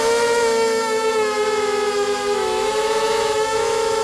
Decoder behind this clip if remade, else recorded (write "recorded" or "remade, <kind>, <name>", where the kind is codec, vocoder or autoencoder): remade, autoencoder, DAC-VAE